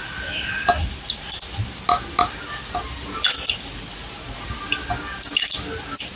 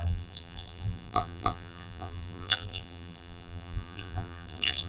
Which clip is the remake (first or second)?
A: second